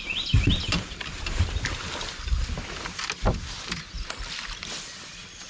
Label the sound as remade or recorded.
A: recorded